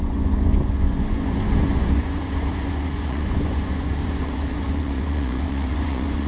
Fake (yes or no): yes